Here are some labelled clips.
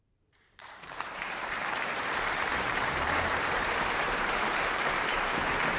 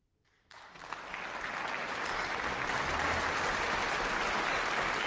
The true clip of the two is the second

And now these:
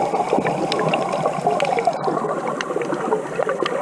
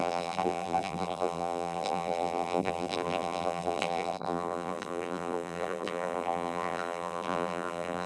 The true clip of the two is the first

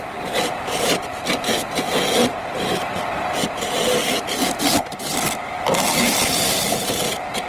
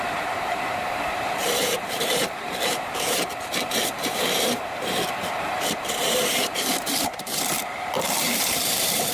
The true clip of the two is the first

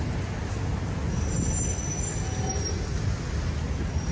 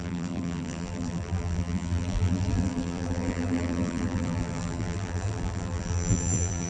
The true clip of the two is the first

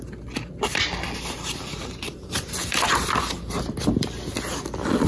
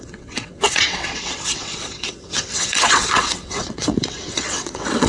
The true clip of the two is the first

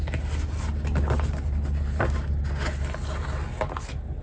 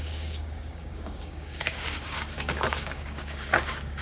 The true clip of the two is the first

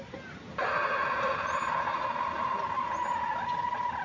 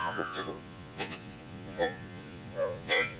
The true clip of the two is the first